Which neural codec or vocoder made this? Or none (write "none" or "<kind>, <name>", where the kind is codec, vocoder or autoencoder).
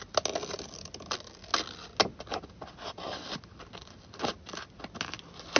none